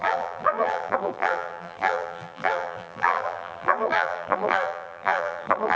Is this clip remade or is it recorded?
remade